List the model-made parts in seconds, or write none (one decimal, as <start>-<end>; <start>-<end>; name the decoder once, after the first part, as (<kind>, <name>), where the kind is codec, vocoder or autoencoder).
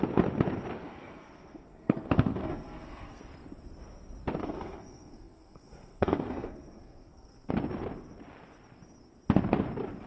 0.8-3.2 (codec, SNAC); 4.4-7.5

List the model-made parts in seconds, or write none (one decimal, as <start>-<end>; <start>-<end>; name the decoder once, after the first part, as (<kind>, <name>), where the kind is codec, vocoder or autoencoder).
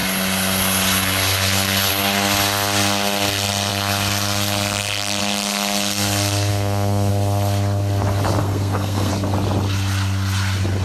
6.5-7.1 (codec, SNAC); 8.4-9.1